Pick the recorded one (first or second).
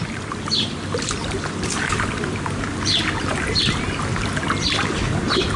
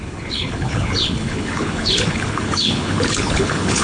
first